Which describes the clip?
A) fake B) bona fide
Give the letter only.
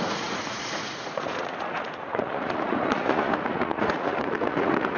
A